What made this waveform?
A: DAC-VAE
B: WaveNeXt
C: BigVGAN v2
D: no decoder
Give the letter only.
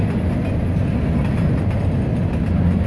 D